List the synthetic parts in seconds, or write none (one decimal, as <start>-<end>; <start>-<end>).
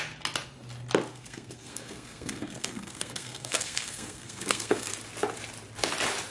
1.1-4.9